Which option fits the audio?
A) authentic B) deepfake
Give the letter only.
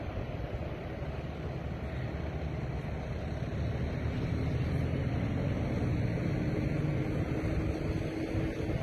A